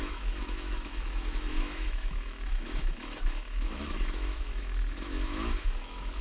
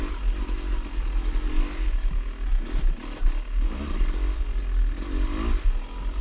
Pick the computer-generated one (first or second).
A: first